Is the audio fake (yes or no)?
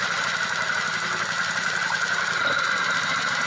yes